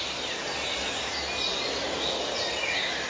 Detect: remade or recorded recorded